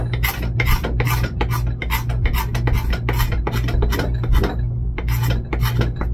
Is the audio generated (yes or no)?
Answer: no